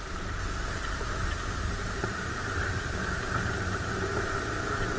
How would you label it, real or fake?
fake